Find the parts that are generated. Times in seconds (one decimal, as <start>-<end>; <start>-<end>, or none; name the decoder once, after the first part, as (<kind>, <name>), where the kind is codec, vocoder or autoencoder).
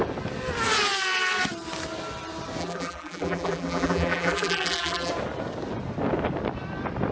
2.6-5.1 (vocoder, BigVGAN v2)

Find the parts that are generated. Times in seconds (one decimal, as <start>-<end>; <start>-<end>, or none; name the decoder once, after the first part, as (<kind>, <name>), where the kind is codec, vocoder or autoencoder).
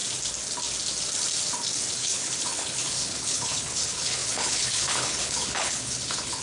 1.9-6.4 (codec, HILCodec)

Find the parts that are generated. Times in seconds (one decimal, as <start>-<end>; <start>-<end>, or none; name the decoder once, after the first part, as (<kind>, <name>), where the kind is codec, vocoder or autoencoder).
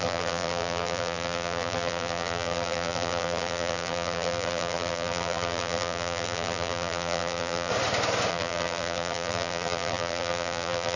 0.0-7.7 (vocoder, BigVGAN v2); 8.3-11.0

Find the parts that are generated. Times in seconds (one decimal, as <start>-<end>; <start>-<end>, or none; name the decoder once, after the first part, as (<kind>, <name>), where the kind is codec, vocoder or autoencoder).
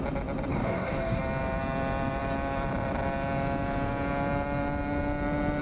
0.5-1.2 (codec, DAC)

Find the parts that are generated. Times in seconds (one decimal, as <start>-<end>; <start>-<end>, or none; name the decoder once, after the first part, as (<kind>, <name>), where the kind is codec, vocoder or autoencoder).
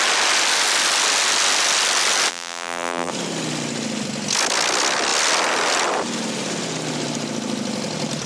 2.3-3.1 (vocoder, BigVGAN v2)